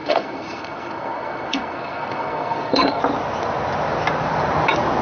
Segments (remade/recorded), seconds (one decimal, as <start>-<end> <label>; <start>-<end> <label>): 0.0-3.0 remade; 3.0-5.0 recorded